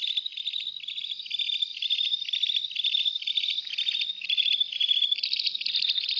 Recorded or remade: recorded